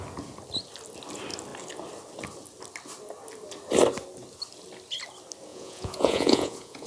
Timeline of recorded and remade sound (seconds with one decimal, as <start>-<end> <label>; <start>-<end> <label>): 0.0-5.5 recorded; 5.5-6.9 remade